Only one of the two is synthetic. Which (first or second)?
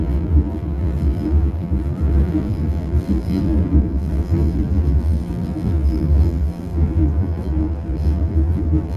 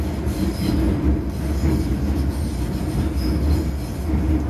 first